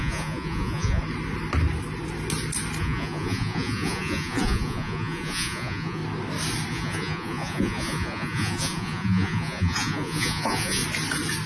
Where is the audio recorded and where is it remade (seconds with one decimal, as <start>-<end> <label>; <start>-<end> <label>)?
0.0-1.0 remade; 1.0-2.8 recorded; 2.8-6.0 remade; 6.0-6.7 recorded; 6.7-10.8 remade; 10.8-11.5 recorded